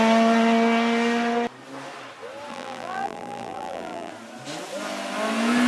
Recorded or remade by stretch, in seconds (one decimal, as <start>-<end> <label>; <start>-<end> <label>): 0.0-2.5 recorded; 2.5-4.1 remade; 4.1-5.7 recorded